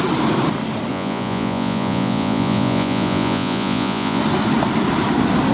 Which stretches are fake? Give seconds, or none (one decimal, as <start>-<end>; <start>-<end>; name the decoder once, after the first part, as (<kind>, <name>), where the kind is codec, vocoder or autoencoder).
0.9-4.2 (vocoder, Vocos)